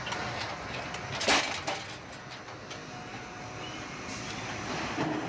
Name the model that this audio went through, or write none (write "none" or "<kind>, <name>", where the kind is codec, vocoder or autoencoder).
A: none